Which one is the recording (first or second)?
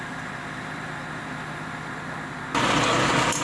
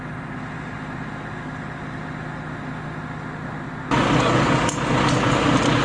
second